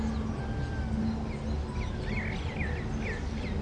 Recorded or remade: recorded